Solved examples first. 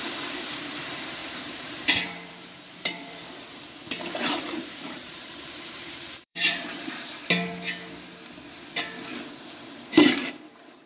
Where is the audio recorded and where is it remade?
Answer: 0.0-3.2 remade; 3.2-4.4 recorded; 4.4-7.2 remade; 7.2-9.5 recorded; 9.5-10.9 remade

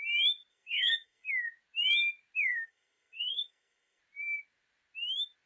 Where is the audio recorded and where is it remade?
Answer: 0.0-0.5 recorded; 0.5-1.3 remade; 1.3-2.5 recorded; 2.5-4.0 remade; 4.0-5.5 recorded

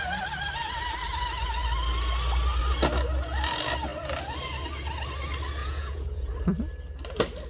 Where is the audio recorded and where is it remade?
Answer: 0.0-5.6 recorded; 5.6-6.3 remade; 6.3-7.5 recorded

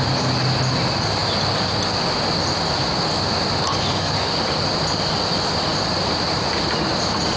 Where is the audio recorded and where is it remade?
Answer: 0.0-3.7 recorded; 3.7-4.3 remade; 4.3-7.4 recorded

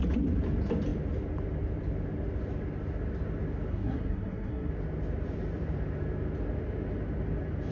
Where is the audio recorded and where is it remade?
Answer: 0.0-3.7 recorded; 3.7-4.7 remade; 4.7-7.7 recorded

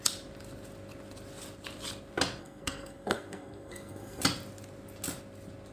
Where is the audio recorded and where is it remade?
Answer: 0.0-2.4 recorded; 2.4-4.2 remade; 4.2-5.7 recorded

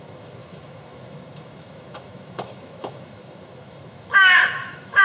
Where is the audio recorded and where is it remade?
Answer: 0.0-5.0 remade

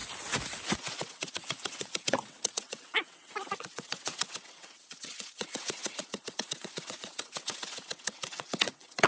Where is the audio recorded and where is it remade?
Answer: 0.0-0.7 recorded; 0.7-9.1 remade